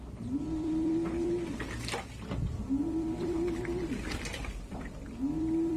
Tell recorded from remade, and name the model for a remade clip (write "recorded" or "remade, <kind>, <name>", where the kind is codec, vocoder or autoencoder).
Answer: remade, vocoder, BigVGAN v2